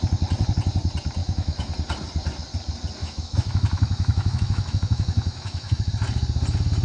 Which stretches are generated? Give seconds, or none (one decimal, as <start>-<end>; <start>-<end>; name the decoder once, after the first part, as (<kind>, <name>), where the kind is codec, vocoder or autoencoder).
1.2-1.7 (autoencoder, DAC-VAE); 3.0-5.9